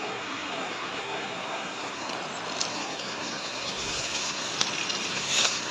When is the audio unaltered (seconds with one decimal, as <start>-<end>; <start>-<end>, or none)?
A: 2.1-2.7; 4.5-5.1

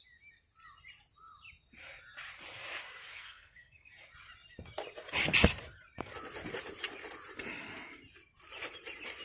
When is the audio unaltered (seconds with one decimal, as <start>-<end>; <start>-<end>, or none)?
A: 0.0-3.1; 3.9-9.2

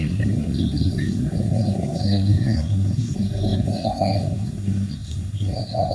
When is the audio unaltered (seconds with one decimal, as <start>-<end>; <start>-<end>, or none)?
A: none

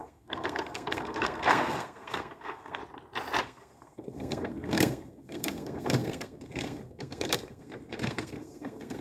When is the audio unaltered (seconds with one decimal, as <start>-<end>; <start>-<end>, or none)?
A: 2.8-3.4